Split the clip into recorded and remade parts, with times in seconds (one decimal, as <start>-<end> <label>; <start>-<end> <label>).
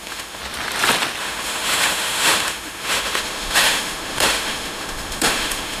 0.0-0.4 remade; 0.4-1.2 recorded; 1.2-5.8 remade